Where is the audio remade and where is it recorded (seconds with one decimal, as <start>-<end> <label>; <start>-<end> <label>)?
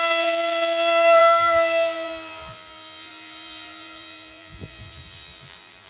0.0-5.9 remade